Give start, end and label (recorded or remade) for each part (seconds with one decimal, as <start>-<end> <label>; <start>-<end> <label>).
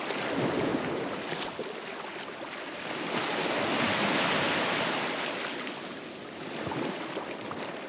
0.0-7.9 recorded